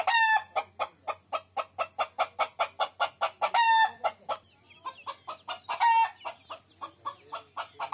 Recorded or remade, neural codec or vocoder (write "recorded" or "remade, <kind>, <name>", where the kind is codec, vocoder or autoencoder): recorded